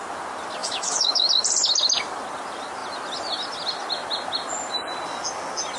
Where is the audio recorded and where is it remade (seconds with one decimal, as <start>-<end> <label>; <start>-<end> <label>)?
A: 0.0-0.6 recorded; 0.6-1.3 remade; 1.3-5.8 recorded